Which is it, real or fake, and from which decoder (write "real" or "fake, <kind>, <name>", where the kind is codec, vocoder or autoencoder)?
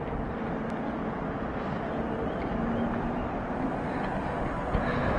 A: real